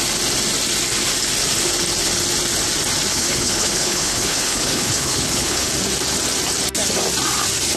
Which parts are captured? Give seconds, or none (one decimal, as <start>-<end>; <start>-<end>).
0.0-3.1; 5.7-7.8